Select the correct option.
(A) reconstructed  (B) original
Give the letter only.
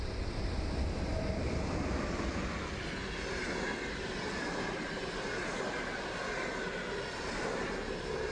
B